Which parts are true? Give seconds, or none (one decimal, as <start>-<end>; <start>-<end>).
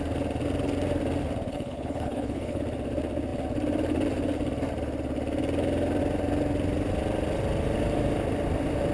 0.0-1.5; 2.6-8.9